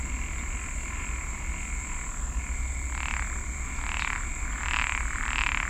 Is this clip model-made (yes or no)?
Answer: no